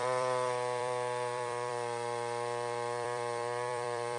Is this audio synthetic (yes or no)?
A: yes